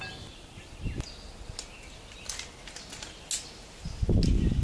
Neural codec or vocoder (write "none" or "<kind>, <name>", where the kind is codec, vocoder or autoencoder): none